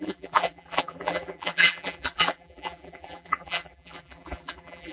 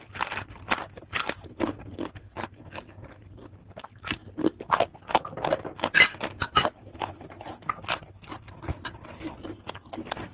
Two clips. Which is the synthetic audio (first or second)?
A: first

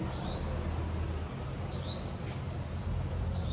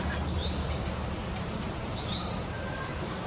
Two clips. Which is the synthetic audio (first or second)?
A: second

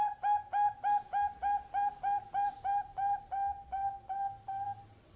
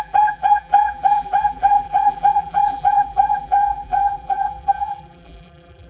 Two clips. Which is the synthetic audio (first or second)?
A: second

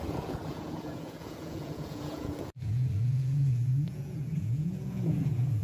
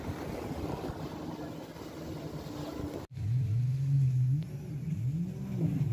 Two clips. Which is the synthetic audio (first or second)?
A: first